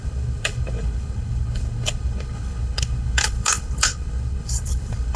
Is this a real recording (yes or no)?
no